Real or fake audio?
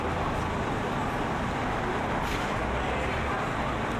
real